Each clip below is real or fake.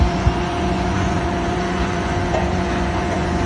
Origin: fake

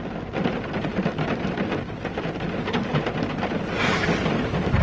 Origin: real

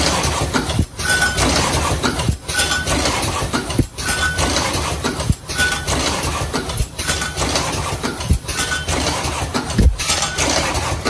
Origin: fake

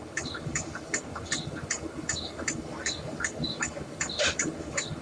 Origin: fake